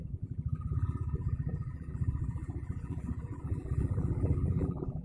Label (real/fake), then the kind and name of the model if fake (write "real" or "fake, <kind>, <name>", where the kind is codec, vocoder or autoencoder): fake, vocoder, BigVGAN v2